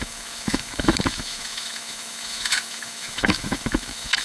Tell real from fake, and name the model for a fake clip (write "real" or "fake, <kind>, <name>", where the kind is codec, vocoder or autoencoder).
fake, autoencoder, DAC-VAE